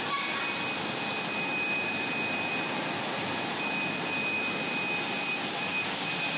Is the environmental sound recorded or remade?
recorded